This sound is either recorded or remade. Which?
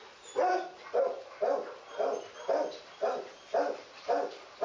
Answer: recorded